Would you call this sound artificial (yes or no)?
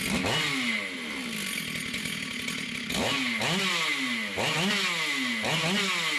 no